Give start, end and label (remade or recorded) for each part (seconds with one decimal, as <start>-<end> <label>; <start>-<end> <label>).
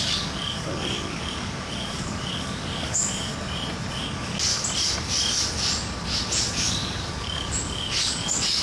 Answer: 0.0-3.3 remade; 3.3-4.0 recorded; 4.0-4.5 remade; 4.5-6.5 recorded; 6.5-8.6 remade